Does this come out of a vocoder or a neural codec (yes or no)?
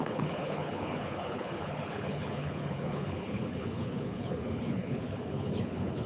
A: yes